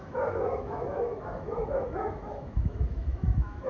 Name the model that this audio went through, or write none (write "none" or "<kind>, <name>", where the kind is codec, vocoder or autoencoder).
autoencoder, DAC-VAE